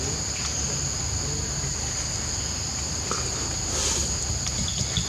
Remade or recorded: recorded